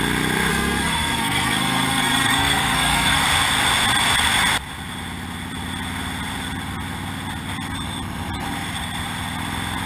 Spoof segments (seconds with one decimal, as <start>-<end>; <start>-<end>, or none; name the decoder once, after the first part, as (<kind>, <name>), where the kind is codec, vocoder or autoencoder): 0.5-3.2 (codec, SNAC)